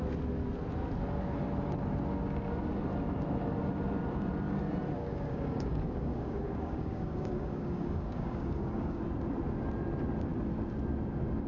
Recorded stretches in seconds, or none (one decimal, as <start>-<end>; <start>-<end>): 0.0-5.0; 9.0-11.5